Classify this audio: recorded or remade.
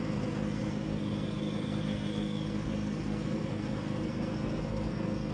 remade